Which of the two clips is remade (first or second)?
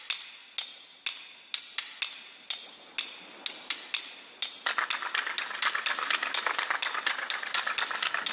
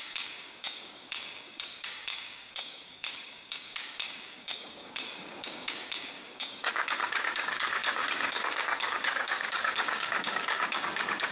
second